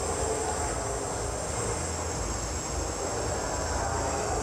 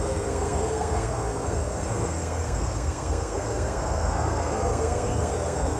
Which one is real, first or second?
first